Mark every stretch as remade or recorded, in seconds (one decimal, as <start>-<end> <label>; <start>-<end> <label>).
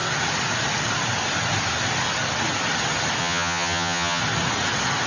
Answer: 0.0-3.2 recorded; 3.2-4.2 remade; 4.2-5.1 recorded